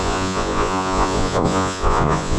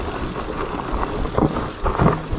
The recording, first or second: second